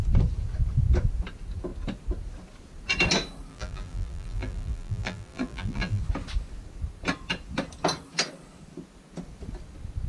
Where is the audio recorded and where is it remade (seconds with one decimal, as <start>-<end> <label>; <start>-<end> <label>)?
0.0-3.5 recorded; 3.5-6.0 remade; 6.0-10.1 recorded